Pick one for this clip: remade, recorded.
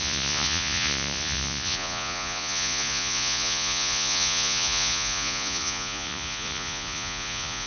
remade